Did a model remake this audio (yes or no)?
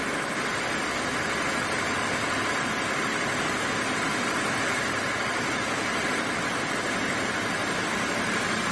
no